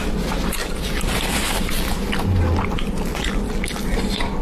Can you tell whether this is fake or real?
real